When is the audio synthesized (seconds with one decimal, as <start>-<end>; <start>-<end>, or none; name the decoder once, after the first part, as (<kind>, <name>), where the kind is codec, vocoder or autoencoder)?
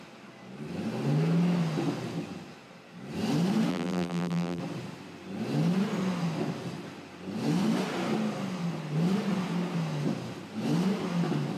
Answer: 3.7-4.6 (vocoder, BigVGAN v2)